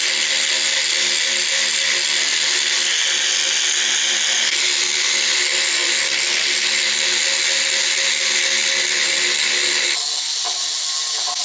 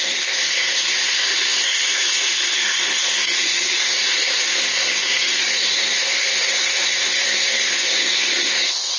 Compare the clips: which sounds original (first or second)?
first